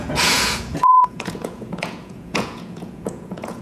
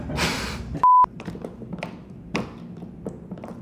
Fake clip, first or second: first